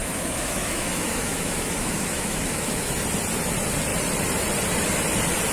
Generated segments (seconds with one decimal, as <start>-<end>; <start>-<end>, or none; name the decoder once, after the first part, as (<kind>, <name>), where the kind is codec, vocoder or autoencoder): 0.0-2.9 (autoencoder, DAC-VAE)